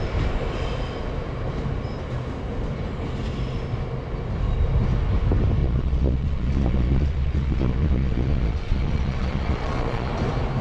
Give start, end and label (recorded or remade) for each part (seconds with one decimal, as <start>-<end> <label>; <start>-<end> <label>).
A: 0.0-5.6 recorded; 5.6-10.1 remade; 10.1-10.6 recorded